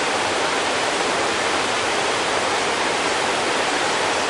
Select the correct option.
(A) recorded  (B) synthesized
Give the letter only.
A